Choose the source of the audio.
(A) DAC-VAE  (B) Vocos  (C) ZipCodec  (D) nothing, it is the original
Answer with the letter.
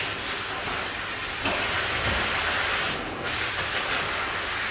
D